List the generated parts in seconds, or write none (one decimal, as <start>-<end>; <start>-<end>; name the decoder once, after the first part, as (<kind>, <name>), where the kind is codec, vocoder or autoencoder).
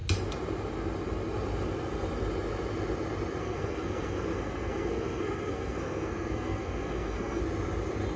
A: 3.4-7.4 (codec, SNAC)